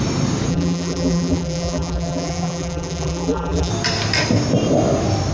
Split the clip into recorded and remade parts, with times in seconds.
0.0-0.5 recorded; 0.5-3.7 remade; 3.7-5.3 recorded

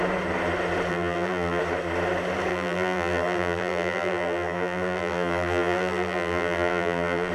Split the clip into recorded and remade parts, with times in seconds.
0.0-0.9 recorded; 0.9-1.6 remade; 1.6-2.5 recorded; 2.5-7.3 remade

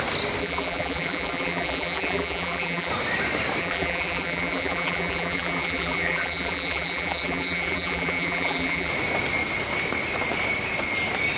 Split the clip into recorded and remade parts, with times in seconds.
0.0-0.4 recorded; 0.4-2.9 remade; 2.9-3.6 recorded; 3.6-8.9 remade; 8.9-11.4 recorded